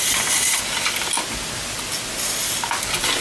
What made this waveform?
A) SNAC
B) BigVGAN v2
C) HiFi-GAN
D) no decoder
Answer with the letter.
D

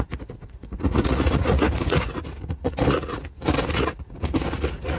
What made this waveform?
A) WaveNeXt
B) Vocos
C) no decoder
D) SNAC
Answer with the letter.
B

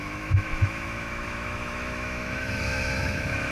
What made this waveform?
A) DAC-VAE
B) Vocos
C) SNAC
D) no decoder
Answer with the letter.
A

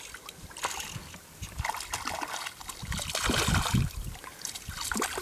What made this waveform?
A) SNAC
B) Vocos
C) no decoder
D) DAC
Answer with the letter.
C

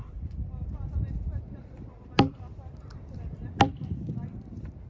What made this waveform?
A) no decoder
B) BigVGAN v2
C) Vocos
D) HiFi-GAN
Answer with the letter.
B